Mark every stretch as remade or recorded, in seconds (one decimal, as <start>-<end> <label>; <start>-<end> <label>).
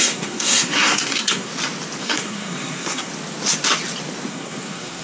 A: 0.0-1.5 remade; 1.5-2.0 recorded; 2.0-3.1 remade; 3.1-4.3 recorded; 4.3-5.0 remade